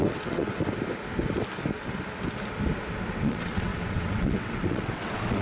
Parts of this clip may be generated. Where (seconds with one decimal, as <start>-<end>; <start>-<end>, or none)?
0.0-0.5; 3.1-5.4